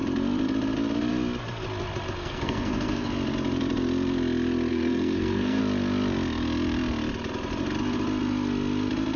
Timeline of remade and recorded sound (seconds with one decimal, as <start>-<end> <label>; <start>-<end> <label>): 0.0-2.2 recorded; 2.2-3.1 remade; 3.1-4.7 recorded; 4.7-5.6 remade; 5.6-9.2 recorded